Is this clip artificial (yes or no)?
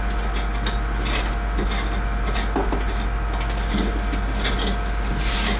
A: no